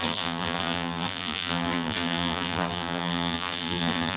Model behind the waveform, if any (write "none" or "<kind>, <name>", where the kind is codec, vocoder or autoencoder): vocoder, BigVGAN v2